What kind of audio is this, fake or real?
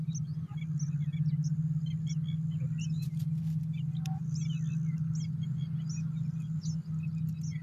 real